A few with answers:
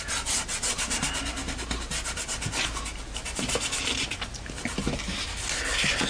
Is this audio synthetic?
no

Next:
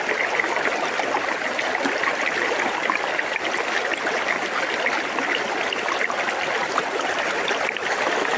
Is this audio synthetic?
no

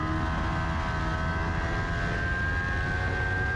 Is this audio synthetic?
no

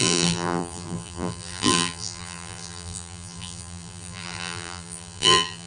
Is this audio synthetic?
yes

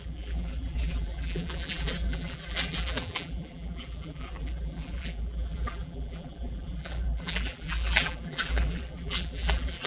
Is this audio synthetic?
yes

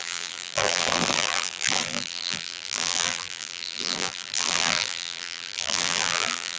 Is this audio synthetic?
yes